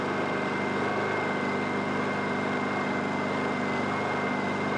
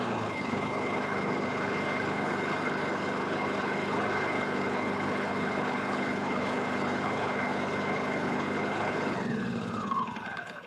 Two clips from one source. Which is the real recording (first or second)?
first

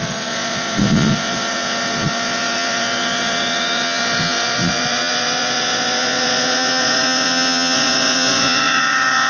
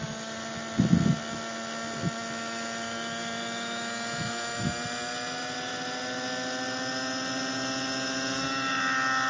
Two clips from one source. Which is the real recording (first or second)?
second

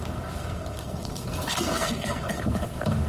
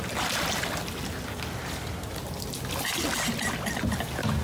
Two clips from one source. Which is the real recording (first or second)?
second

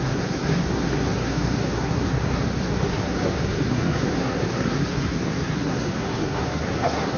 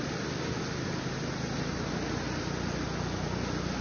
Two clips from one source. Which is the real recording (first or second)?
second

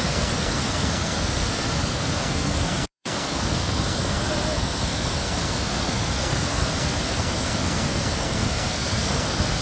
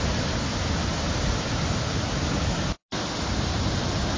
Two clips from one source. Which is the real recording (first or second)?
second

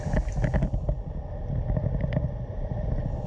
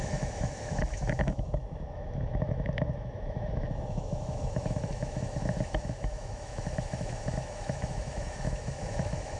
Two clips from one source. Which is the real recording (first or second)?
first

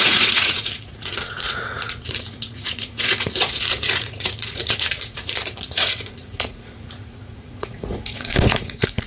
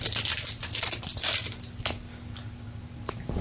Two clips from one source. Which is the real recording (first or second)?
second